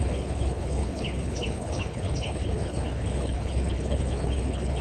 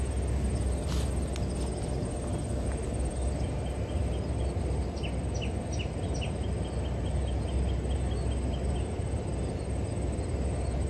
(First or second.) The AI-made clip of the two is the first